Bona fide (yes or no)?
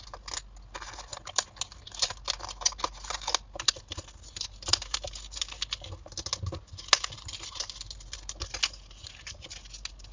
yes